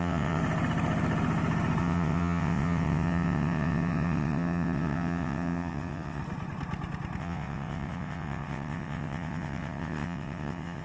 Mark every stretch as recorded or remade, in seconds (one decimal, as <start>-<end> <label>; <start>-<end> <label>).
0.0-0.4 remade; 0.4-1.8 recorded; 1.8-6.2 remade; 6.2-7.2 recorded; 7.2-10.8 remade